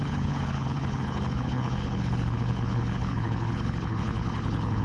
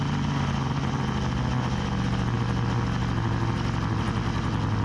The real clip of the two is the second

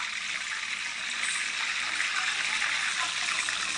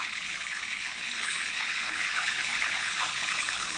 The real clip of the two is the first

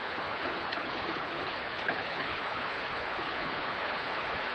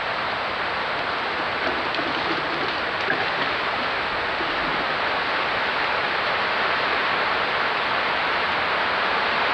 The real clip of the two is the second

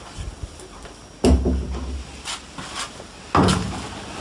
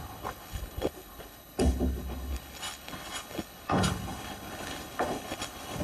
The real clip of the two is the first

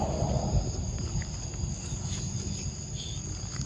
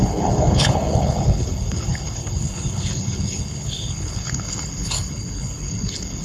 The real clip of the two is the first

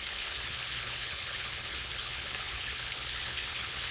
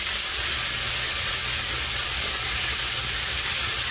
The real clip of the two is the second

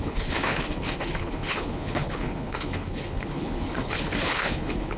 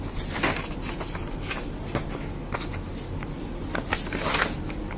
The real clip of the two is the second